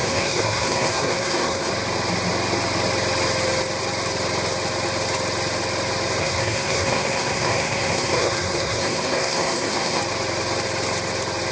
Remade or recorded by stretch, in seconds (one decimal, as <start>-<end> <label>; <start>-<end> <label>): 0.0-1.7 remade; 1.7-6.2 recorded; 6.2-10.0 remade; 10.0-11.5 recorded